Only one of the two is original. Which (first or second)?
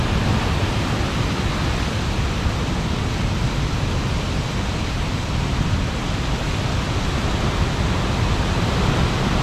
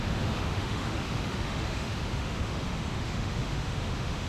first